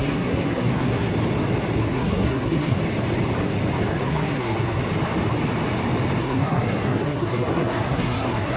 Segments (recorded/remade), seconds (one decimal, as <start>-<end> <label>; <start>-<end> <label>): 0.0-1.1 remade; 1.1-1.8 recorded; 1.8-2.8 remade; 2.8-3.9 recorded; 3.9-4.8 remade; 4.8-6.2 recorded; 6.2-8.6 remade